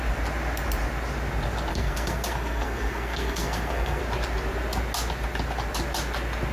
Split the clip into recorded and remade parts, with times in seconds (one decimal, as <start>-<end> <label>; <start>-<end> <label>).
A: 0.0-1.7 recorded; 1.7-4.0 remade; 4.0-6.5 recorded